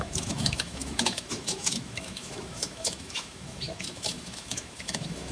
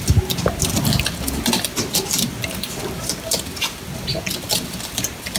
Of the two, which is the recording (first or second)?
second